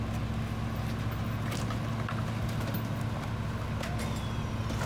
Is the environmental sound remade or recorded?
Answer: recorded